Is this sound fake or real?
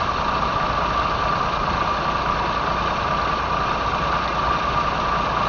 real